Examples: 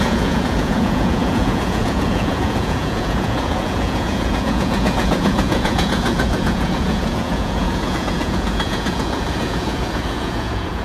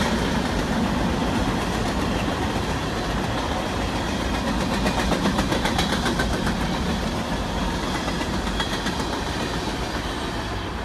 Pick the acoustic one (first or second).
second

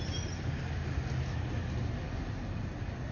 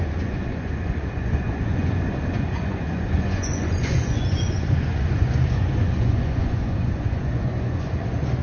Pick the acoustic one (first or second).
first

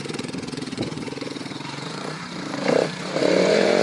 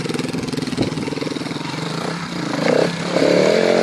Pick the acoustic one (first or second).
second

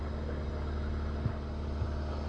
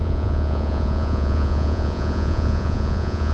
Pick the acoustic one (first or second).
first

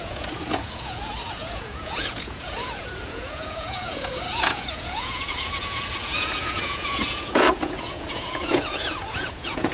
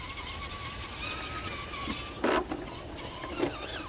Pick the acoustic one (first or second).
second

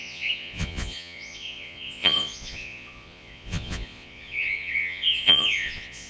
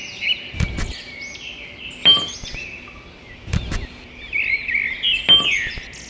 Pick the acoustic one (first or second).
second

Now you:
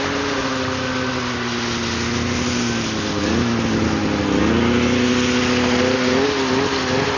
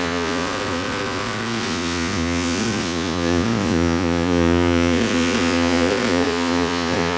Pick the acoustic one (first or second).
first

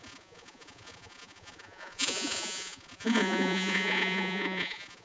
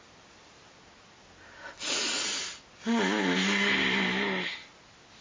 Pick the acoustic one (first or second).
second